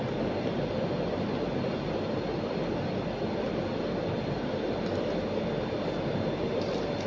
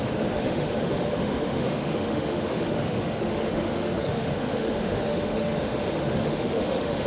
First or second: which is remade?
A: second